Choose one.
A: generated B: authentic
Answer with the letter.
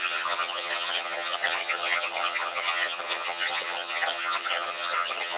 A